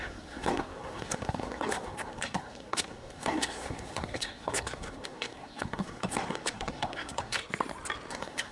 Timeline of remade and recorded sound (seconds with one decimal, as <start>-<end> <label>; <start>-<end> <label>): 0.0-7.4 remade; 7.4-8.1 recorded; 8.1-8.5 remade